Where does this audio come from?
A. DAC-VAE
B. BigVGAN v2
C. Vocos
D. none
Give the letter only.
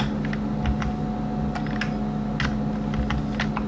D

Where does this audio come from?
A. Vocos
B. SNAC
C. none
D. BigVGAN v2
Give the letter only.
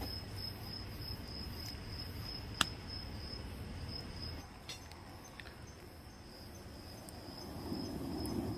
C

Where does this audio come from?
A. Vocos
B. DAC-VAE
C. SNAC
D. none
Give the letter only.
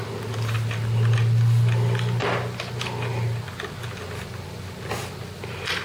D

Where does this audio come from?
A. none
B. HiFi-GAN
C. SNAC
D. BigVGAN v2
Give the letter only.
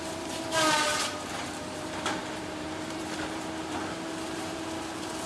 D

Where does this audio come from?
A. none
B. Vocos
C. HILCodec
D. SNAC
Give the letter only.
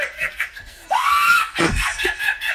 D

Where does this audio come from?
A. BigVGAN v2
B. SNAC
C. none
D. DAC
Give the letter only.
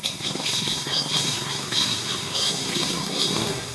B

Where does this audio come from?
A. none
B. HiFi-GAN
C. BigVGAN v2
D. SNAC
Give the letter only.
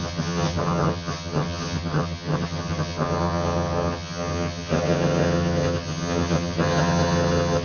B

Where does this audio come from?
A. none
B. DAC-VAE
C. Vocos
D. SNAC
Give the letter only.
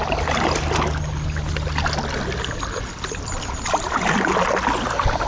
A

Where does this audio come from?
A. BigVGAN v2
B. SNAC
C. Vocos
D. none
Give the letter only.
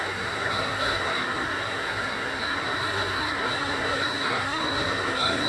B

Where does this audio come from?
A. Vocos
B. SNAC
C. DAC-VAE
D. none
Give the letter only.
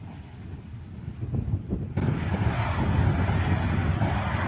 D